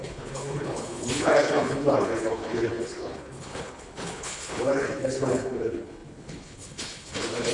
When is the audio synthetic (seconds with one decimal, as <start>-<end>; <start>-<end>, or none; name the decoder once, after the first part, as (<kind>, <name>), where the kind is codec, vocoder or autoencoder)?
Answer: 0.0-7.5 (codec, HILCodec)